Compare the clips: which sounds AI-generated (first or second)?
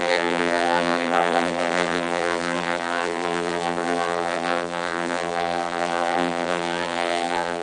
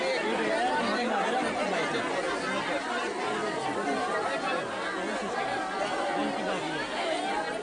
first